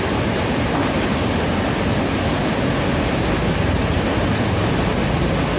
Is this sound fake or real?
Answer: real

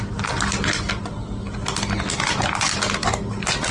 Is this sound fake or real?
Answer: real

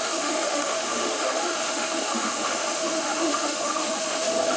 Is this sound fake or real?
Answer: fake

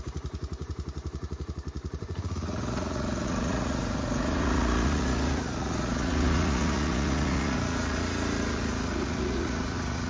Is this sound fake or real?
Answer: fake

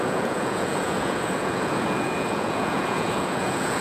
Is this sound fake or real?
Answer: fake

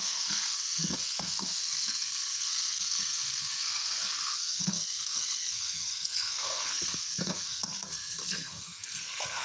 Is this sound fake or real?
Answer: fake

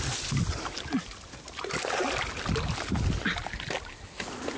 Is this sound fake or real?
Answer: real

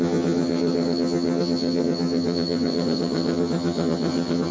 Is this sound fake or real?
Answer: fake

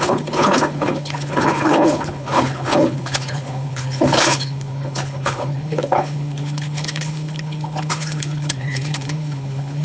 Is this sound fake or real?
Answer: fake